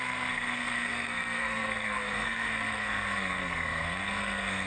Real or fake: fake